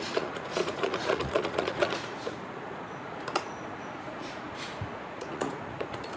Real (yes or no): no